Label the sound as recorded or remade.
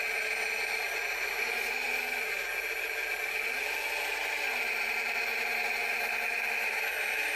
recorded